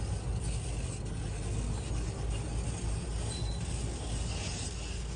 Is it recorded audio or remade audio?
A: recorded